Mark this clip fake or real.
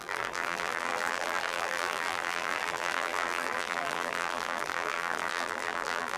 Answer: fake